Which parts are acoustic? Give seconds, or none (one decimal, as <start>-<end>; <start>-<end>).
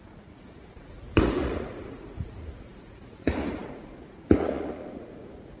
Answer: none